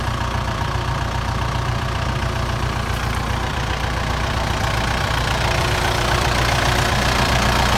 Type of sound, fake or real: fake